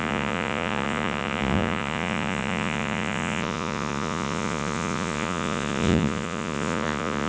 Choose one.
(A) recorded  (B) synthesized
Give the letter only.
B